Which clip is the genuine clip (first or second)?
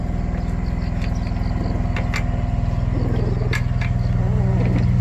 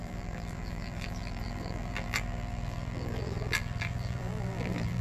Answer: first